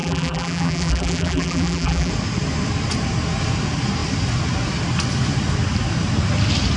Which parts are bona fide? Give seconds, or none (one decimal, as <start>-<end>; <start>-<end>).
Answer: 2.1-6.8